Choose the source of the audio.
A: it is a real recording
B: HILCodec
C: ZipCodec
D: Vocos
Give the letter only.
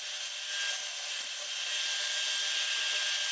A